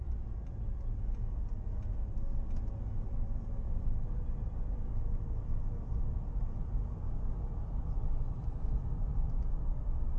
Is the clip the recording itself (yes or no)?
yes